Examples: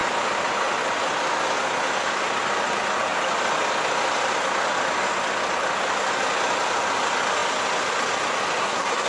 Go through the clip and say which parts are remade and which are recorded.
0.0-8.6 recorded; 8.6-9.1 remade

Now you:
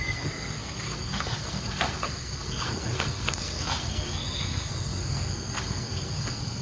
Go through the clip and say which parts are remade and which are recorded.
0.0-6.6 remade

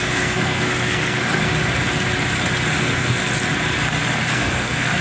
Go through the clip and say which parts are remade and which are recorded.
0.0-1.5 remade; 1.5-2.8 recorded; 2.8-3.2 remade; 3.2-4.3 recorded; 4.3-5.0 remade